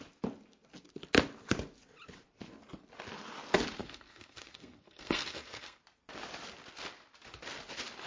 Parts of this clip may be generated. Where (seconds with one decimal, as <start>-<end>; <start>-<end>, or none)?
3.8-5.8